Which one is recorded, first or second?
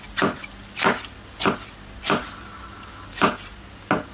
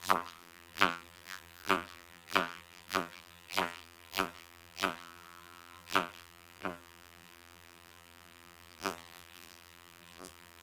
first